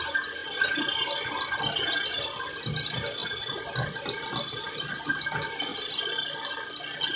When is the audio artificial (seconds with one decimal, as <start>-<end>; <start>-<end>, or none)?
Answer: none